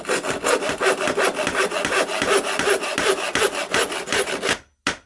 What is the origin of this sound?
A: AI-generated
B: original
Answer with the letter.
B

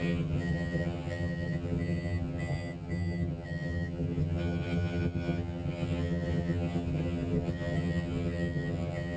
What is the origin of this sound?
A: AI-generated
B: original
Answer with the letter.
A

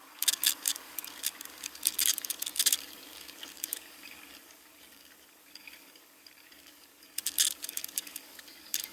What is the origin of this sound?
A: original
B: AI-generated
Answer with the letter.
B